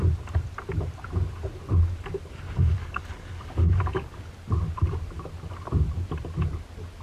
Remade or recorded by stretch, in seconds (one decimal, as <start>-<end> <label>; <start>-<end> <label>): 0.0-2.8 recorded; 2.8-4.2 remade; 4.2-7.0 recorded